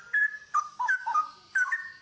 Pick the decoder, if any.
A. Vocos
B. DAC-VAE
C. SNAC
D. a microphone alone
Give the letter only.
D